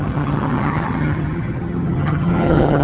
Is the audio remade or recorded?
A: remade